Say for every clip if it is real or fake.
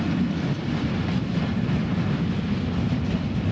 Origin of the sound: real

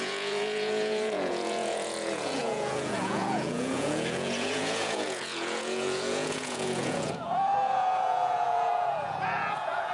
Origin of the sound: fake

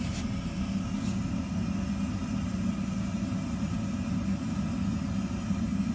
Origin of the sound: real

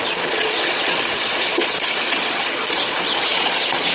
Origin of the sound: fake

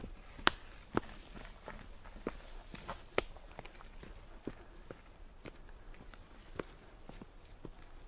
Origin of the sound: real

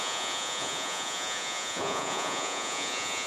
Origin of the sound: fake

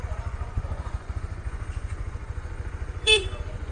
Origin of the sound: fake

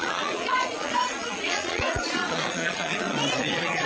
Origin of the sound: fake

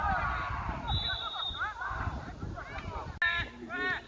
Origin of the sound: real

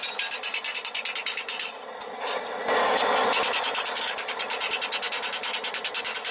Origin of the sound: real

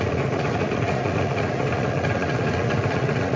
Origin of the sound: fake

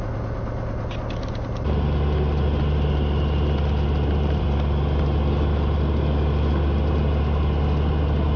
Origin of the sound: real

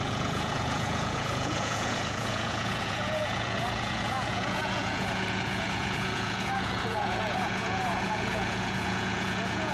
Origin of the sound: fake